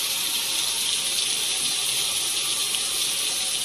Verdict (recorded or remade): recorded